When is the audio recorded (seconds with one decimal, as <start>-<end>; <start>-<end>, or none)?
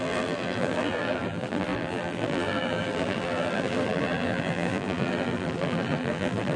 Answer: none